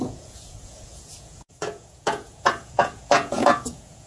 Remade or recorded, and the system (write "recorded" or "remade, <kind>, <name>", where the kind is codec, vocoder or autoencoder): remade, vocoder, Vocos